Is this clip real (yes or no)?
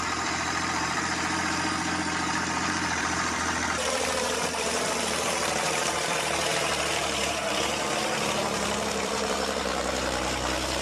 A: no